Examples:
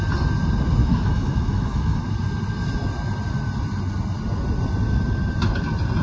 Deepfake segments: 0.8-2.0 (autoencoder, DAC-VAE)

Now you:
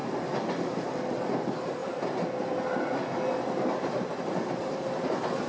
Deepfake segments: none

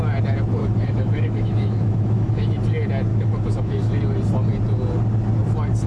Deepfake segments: 0.6-2.6 (autoencoder, DAC-VAE); 3.1-4.0

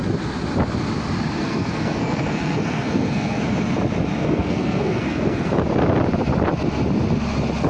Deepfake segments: 1.4-3.4 (codec, SNAC); 4.2-5.5

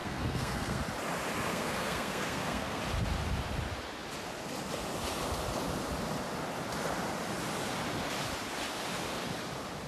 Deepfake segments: 0.0-0.8 (codec, SNAC); 1.5-2.8

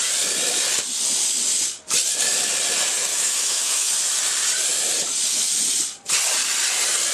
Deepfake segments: 3.1-3.9 (autoencoder, DAC-VAE)